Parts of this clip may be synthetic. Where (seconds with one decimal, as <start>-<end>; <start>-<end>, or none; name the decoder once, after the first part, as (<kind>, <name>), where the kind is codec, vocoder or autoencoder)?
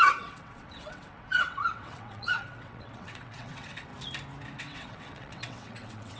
0.0-3.9 (vocoder, WaveNeXt); 4.6-6.2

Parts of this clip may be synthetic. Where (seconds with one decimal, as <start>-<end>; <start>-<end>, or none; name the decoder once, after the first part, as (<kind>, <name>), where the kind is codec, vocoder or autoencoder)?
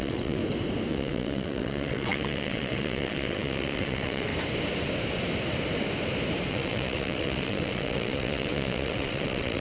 0.0-0.4 (vocoder, WaveNeXt); 0.9-4.3; 6.5-9.6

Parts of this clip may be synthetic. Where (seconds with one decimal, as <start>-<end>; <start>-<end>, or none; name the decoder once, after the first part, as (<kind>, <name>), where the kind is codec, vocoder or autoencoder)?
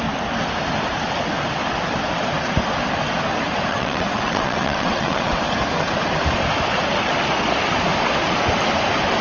3.7-5.4 (vocoder, WaveNeXt)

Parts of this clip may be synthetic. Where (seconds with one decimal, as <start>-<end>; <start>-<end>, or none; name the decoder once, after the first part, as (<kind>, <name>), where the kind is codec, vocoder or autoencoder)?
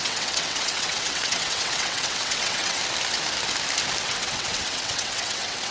0.0-2.8 (vocoder, WaveNeXt); 4.0-5.7